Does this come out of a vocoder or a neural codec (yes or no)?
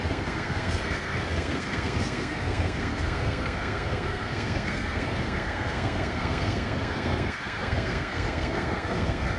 yes